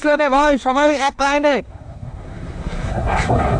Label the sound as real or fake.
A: fake